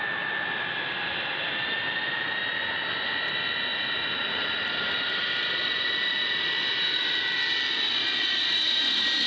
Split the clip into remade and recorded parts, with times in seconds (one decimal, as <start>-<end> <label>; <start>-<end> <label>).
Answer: 0.0-9.3 remade